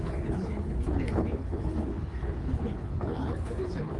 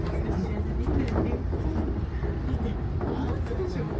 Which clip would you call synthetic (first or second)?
first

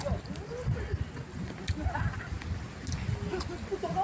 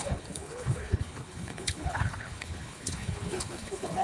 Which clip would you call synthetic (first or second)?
second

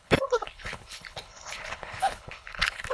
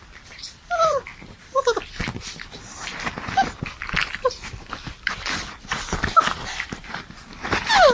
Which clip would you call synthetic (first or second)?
first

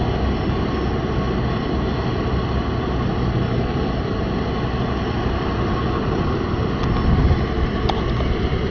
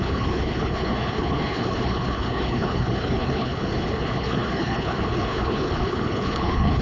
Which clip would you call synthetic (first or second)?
second